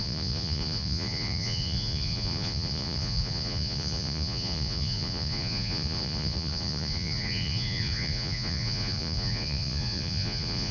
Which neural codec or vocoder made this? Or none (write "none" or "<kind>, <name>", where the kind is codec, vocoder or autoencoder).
vocoder, Vocos